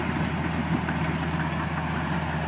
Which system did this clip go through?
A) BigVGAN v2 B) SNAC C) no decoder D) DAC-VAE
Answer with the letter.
C